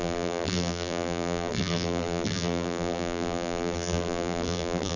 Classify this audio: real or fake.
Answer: fake